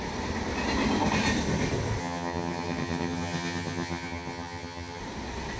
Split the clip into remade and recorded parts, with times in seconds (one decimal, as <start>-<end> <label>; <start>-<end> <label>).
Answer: 0.0-2.0 recorded; 2.0-5.0 remade; 5.0-5.6 recorded